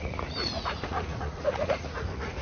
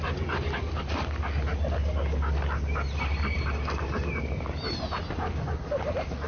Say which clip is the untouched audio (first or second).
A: second